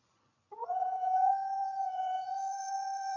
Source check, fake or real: fake